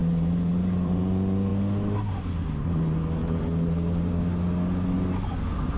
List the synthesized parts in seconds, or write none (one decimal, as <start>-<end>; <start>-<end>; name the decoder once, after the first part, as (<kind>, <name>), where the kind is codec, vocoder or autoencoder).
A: 0.0-1.0 (vocoder, BigVGAN v2); 3.2-4.2